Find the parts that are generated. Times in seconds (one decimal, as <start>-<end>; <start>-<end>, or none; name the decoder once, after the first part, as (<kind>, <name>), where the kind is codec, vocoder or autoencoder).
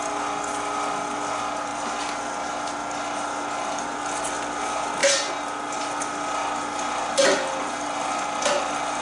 none